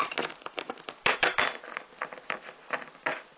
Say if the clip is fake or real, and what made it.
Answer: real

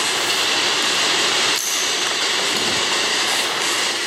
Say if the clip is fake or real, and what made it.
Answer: fake, vocoder, BigVGAN v2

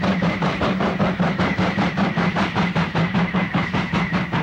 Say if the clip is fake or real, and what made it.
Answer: fake, vocoder, BigVGAN v2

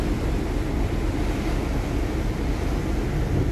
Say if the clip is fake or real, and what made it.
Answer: real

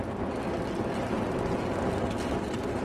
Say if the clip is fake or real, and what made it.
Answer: real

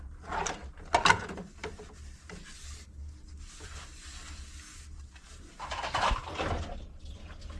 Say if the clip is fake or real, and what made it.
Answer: real